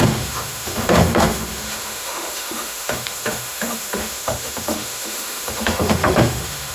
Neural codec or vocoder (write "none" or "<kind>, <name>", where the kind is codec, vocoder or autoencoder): autoencoder, DAC-VAE